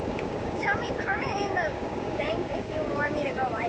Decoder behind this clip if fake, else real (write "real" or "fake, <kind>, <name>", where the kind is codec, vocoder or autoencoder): fake, codec, DAC